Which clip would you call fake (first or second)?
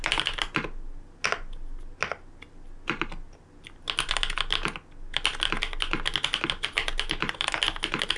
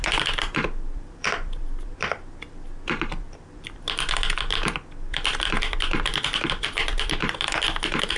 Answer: second